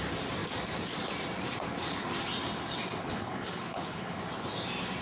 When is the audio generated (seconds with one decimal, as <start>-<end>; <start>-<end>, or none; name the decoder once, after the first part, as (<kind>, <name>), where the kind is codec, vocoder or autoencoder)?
3.0-4.2 (codec, HILCodec)